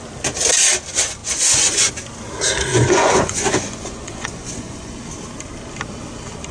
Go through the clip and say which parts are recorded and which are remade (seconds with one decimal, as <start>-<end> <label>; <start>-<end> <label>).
0.0-1.2 recorded; 1.2-1.9 remade; 1.9-2.7 recorded; 2.7-5.0 remade; 5.0-6.5 recorded